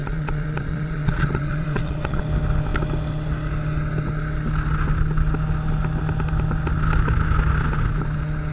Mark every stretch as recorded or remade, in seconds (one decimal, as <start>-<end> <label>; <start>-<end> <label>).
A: 0.0-2.2 remade; 2.2-8.5 recorded